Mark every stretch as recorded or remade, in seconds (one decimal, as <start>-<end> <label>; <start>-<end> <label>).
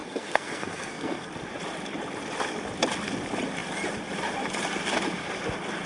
0.0-1.3 remade; 1.3-5.9 recorded